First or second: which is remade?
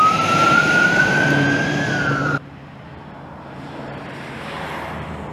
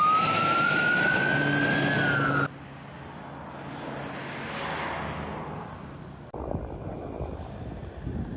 first